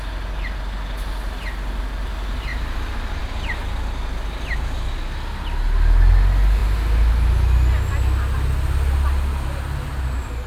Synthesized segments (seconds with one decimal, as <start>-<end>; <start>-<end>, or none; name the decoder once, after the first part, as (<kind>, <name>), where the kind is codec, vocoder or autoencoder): none